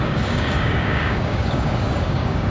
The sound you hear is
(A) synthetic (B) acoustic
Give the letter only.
A